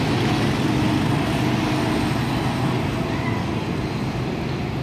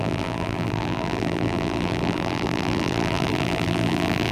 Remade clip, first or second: second